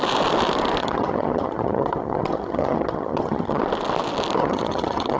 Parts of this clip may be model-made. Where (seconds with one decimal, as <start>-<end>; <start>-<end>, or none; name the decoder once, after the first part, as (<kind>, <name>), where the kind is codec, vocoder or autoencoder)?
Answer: 0.8-3.6 (vocoder, HiFi-GAN); 4.4-5.2